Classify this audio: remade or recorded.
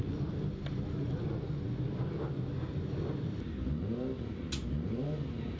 recorded